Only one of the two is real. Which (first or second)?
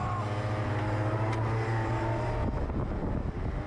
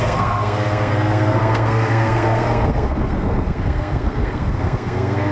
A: first